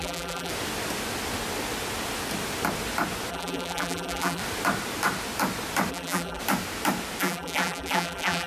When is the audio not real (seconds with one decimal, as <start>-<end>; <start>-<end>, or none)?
0.0-0.5; 3.3-4.4; 5.9-6.4; 7.2-8.5